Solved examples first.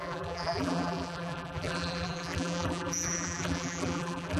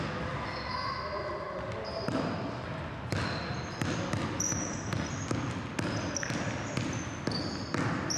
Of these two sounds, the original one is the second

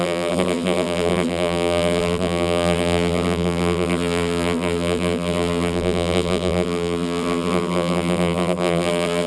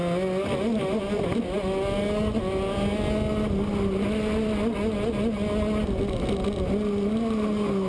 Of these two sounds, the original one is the second